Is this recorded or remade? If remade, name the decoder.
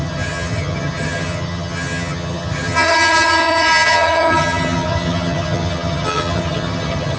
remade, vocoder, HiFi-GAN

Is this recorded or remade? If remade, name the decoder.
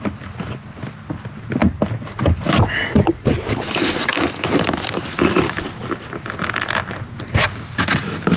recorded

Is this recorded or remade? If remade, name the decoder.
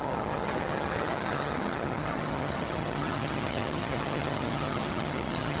remade, vocoder, HiFi-GAN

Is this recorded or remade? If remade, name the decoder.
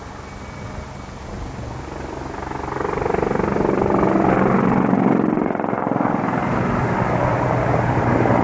recorded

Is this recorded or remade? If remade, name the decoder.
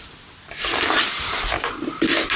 recorded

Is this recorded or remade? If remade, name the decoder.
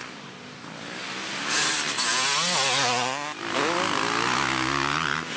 recorded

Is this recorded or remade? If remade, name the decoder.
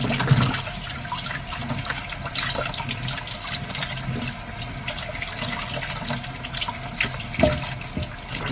recorded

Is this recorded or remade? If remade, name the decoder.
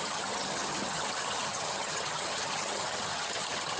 remade, vocoder, HiFi-GAN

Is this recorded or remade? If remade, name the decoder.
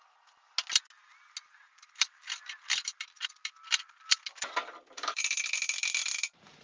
recorded